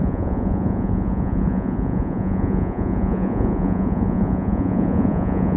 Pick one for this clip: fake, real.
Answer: fake